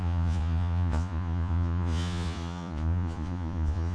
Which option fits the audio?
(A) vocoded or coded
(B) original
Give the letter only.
A